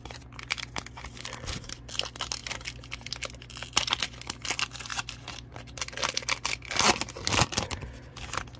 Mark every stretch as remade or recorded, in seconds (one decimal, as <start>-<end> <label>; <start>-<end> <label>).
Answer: 0.0-8.6 recorded